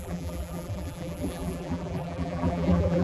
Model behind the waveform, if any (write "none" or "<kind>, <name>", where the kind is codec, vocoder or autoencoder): vocoder, BigVGAN v2